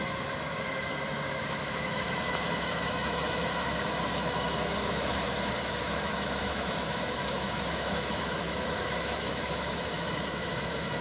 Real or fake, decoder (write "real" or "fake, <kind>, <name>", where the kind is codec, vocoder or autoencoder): fake, autoencoder, DAC-VAE